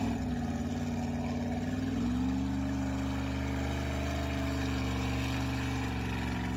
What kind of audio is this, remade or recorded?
recorded